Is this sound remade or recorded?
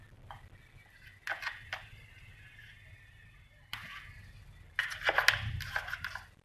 recorded